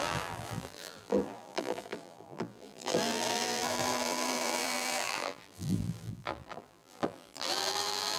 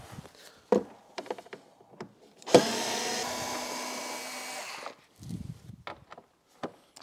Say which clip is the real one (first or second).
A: second